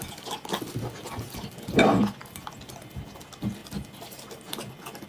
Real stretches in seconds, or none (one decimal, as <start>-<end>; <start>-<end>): 0.0-5.1